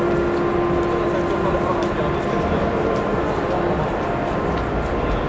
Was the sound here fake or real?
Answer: real